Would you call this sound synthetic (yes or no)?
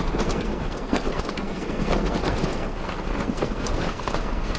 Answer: yes